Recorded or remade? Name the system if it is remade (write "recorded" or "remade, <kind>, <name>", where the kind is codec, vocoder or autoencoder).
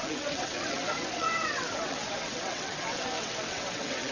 remade, vocoder, WaveNeXt